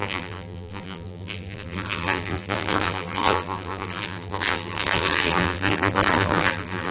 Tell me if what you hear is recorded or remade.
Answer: remade